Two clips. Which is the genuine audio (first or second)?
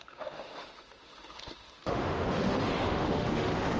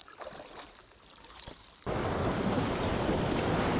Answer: second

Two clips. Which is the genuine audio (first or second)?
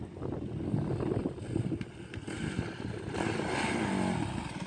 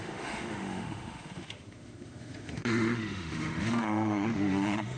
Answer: first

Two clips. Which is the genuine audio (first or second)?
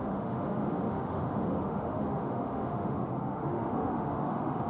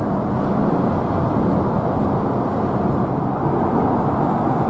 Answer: second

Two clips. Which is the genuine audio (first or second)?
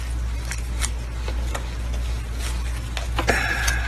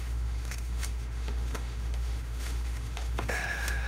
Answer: first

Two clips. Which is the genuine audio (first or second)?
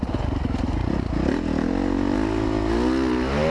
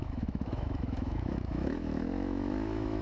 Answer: first